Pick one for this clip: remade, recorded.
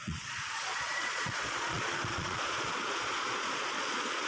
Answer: remade